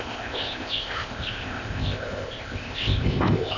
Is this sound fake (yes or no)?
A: yes